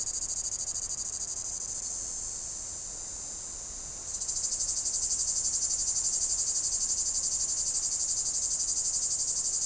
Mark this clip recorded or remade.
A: remade